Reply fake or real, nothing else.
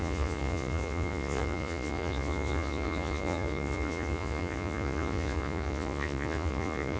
fake